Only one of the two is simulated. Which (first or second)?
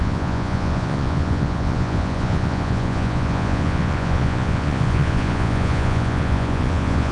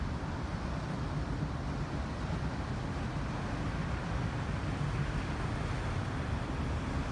first